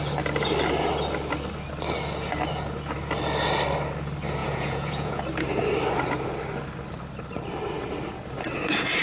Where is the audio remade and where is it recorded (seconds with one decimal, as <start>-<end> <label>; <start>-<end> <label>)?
0.0-4.4 recorded; 4.4-5.2 remade; 5.2-9.0 recorded

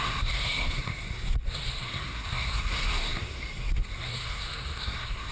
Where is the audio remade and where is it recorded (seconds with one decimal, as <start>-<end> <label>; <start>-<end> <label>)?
0.0-5.3 remade

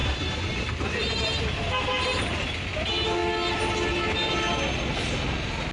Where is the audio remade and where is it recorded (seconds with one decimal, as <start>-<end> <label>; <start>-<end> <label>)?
0.0-5.7 recorded

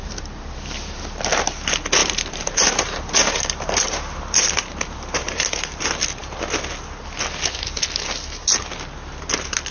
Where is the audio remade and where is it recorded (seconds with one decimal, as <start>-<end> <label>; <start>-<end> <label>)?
0.0-1.0 remade; 1.0-2.0 recorded; 2.0-5.8 remade; 5.8-9.7 recorded

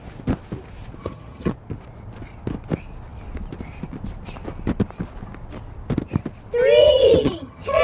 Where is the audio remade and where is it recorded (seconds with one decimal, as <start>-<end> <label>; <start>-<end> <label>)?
0.0-1.0 recorded; 1.0-1.5 remade; 1.5-6.8 recorded; 6.8-7.8 remade

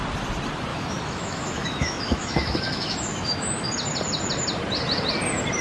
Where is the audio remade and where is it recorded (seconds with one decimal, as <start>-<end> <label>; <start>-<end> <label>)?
0.0-0.7 recorded; 0.7-3.7 remade; 3.7-5.6 recorded

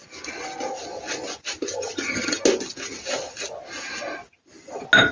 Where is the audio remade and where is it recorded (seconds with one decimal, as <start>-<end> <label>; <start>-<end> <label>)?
0.0-1.7 recorded; 1.7-2.4 remade; 2.4-5.1 recorded